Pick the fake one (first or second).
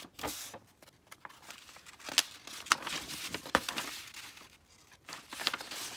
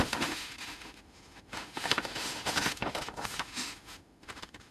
second